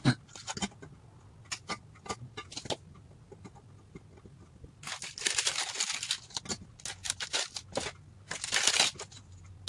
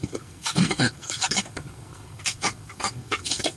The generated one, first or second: second